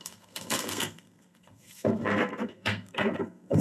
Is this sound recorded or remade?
remade